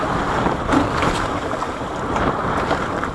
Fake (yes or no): yes